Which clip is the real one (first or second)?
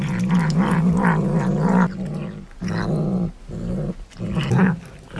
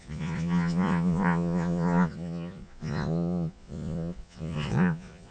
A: first